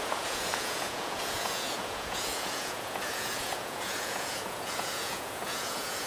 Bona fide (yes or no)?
no